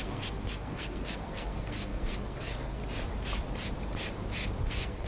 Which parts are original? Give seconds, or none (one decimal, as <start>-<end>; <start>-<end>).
2.8-4.6